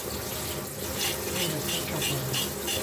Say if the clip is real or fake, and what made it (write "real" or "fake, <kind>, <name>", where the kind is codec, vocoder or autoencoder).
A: real